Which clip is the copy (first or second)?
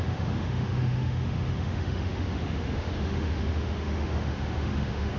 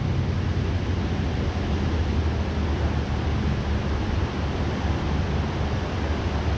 first